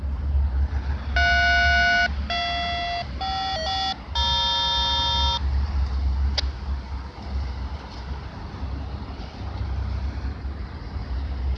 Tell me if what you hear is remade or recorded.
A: recorded